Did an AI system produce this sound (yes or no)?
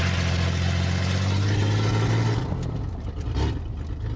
no